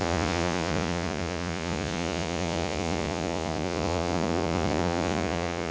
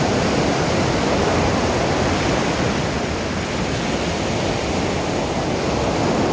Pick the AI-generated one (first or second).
first